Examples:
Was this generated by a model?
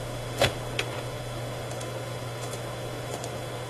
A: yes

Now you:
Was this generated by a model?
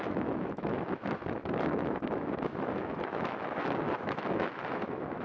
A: yes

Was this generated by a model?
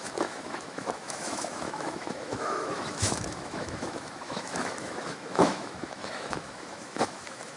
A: yes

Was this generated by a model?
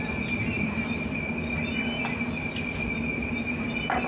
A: no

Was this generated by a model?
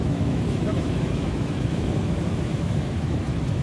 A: yes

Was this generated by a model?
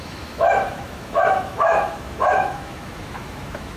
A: yes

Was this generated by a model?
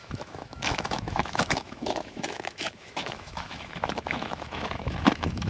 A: yes